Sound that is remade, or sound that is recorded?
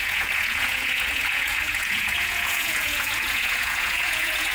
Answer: remade